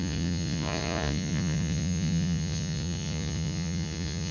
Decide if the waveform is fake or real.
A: fake